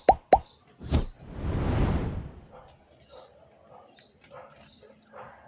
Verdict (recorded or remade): recorded